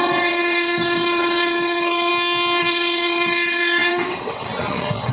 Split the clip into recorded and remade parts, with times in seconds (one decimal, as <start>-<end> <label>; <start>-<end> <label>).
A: 0.0-2.1 remade; 2.1-2.6 recorded; 2.6-5.1 remade